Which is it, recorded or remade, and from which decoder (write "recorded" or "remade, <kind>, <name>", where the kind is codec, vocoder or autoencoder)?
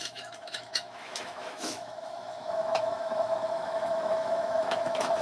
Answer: remade, autoencoder, DAC-VAE